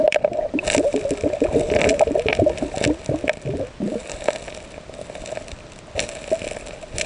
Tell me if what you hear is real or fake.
real